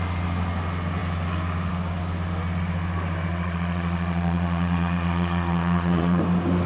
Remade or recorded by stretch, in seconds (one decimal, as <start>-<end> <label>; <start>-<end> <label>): 0.0-3.3 recorded; 3.3-6.2 remade; 6.2-6.7 recorded